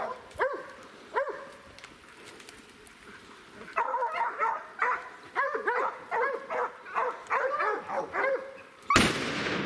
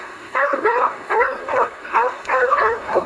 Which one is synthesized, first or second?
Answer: second